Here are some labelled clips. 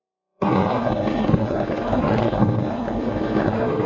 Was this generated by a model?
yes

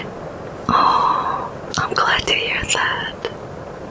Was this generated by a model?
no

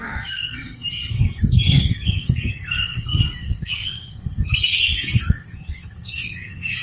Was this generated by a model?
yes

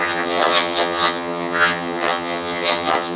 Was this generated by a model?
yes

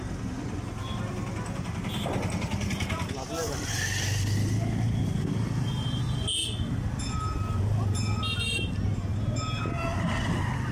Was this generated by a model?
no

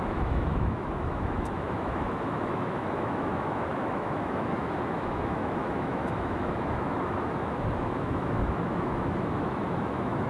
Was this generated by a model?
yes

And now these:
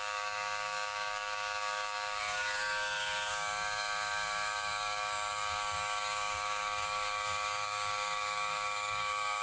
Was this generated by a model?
yes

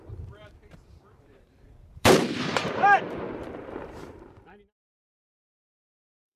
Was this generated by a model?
yes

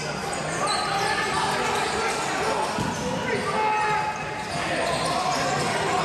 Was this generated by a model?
no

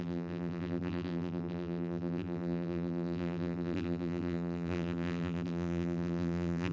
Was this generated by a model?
yes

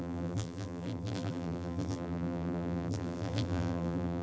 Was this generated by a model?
yes